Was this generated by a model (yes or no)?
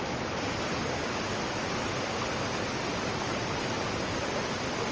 no